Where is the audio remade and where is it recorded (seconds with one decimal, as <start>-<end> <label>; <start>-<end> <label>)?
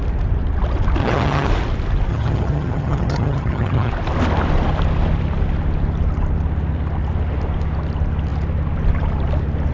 0.0-1.0 recorded; 1.0-1.5 remade; 1.5-2.1 recorded; 2.1-3.9 remade; 3.9-9.7 recorded